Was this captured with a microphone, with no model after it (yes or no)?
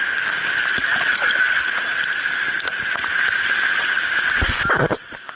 yes